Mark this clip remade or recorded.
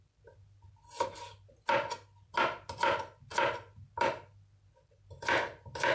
recorded